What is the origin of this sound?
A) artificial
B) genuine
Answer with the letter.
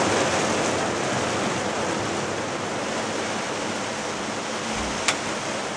B